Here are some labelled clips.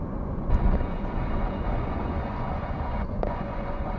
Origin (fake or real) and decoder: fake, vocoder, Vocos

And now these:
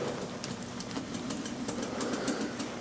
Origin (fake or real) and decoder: real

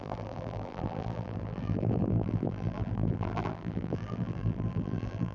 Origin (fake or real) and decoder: fake, vocoder, BigVGAN v2